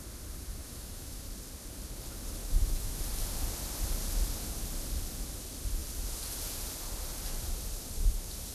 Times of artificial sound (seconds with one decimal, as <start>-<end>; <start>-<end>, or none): 0.6-1.2; 2.4-3.0